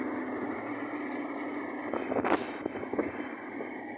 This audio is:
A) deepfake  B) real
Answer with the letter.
B